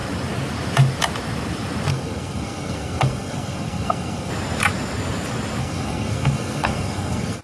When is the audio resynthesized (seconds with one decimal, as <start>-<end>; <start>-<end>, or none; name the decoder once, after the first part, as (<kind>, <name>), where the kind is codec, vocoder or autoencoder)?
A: 1.9-4.3 (codec, SNAC); 5.6-7.4